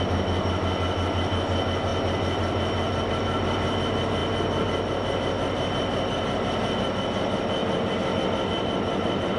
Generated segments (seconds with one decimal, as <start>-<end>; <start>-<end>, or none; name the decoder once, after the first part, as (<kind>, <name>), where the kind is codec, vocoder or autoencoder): none